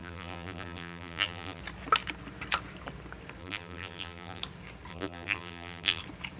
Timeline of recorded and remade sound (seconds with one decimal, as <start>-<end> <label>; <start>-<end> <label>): 0.0-1.6 remade; 1.6-3.4 recorded; 3.4-4.4 remade; 4.4-4.9 recorded; 4.9-6.0 remade; 6.0-6.4 recorded